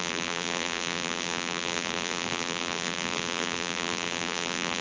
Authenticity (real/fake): fake